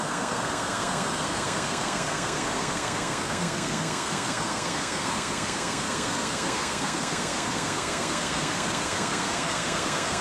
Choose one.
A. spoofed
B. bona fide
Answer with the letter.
A